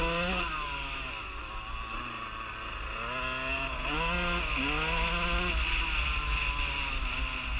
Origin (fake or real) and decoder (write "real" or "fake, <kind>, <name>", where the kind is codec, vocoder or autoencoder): real